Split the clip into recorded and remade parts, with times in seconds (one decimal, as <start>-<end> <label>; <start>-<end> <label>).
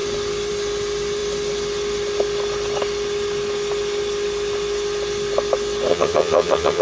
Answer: 0.0-5.9 recorded; 5.9-6.8 remade